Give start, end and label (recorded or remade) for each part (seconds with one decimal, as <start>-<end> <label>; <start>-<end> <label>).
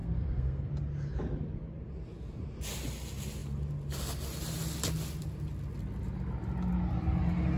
0.0-0.7 remade; 0.7-7.6 recorded